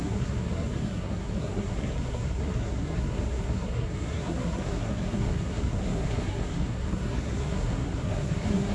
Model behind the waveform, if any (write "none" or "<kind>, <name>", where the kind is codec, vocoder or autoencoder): codec, SNAC